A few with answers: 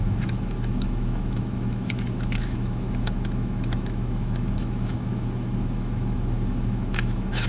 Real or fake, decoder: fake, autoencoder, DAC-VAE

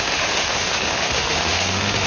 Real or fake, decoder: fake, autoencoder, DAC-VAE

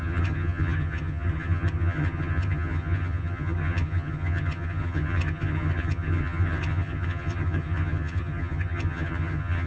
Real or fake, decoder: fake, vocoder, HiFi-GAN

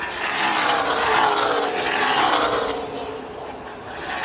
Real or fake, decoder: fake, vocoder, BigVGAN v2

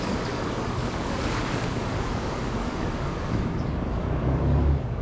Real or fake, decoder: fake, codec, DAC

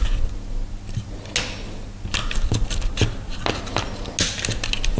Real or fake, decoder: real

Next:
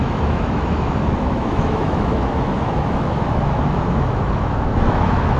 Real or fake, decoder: fake, autoencoder, DAC-VAE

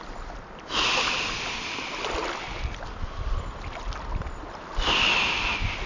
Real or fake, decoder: real